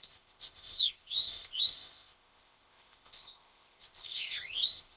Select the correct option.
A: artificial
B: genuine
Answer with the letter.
A